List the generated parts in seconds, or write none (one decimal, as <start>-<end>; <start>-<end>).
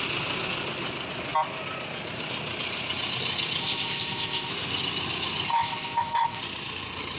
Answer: 3.6-4.5; 5.5-6.4